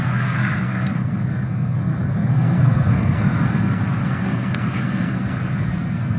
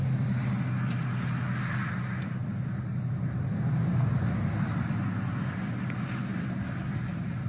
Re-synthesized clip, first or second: first